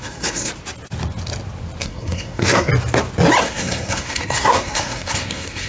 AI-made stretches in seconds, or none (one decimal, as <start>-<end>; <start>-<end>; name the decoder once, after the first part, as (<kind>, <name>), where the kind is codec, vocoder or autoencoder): 0.0-0.5 (codec, SNAC); 1.8-2.7; 3.4-5.7